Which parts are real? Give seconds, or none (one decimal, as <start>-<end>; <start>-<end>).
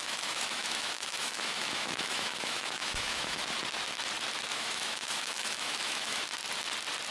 3.4-4.5; 6.2-7.1